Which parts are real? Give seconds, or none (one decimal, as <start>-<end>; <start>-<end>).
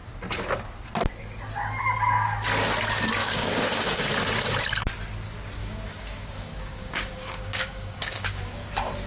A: 0.0-3.2; 4.0-5.6; 8.7-9.1